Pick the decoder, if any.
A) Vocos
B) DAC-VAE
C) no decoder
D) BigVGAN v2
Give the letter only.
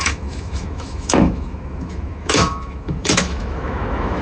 B